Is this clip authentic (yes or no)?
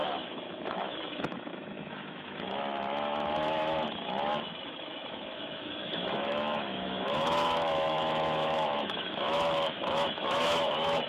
no